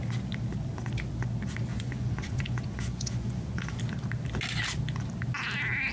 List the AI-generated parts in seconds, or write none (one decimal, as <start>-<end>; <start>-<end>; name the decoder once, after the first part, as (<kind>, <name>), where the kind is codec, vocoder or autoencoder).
1.7-3.8 (vocoder, Vocos)